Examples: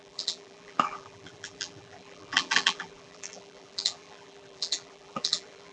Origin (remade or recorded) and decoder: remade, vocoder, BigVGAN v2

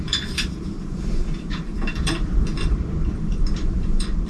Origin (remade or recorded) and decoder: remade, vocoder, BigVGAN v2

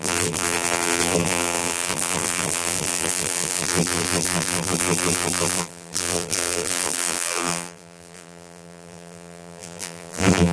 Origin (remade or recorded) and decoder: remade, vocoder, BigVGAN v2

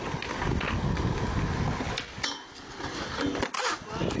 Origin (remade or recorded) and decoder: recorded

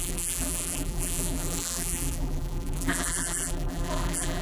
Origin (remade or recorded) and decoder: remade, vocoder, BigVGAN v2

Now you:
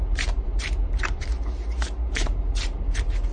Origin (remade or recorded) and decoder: remade, vocoder, BigVGAN v2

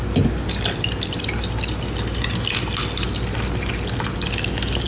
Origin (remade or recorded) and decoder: recorded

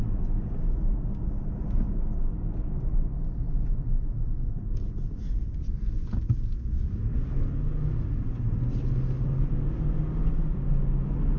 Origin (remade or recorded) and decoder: recorded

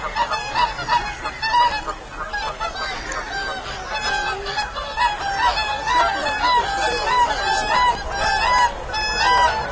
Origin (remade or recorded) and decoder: recorded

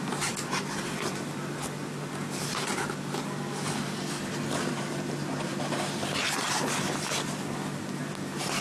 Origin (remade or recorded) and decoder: remade, vocoder, BigVGAN v2